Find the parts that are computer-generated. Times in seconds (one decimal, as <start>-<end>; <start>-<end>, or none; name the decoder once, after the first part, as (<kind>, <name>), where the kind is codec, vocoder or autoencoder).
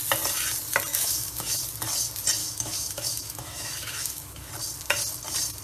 0.9-1.6 (autoencoder, DAC-VAE); 2.4-4.5